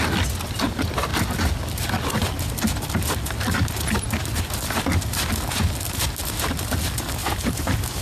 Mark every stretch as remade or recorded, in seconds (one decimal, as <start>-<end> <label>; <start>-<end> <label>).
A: 0.0-7.2 recorded; 7.2-8.0 remade